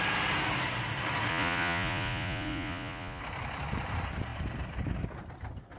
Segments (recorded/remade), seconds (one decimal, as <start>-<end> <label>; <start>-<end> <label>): 0.0-1.3 recorded; 1.3-3.2 remade; 3.2-5.8 recorded